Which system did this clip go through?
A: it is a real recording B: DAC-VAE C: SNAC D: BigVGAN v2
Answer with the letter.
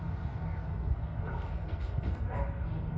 C